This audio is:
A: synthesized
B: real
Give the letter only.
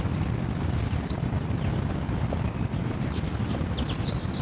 B